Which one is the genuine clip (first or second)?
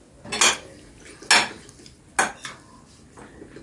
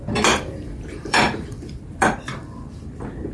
first